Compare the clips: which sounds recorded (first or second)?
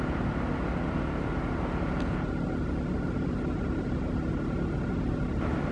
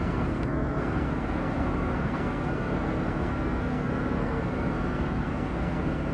first